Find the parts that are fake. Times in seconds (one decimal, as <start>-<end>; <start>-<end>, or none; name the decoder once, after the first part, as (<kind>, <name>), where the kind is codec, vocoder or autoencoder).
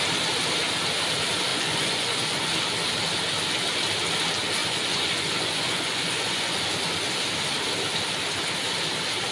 1.5-2.5 (vocoder, Vocos); 4.6-6.7